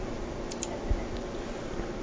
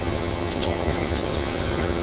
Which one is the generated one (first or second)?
second